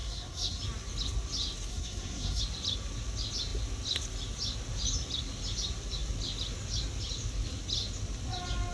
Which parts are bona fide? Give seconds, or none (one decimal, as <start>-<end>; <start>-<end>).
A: 0.6-1.7; 2.4-8.7